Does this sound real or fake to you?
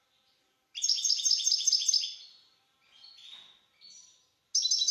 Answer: real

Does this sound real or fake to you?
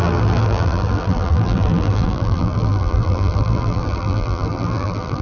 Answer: fake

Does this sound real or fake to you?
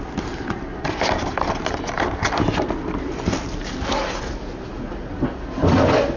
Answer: real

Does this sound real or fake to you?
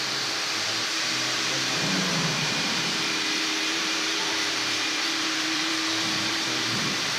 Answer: fake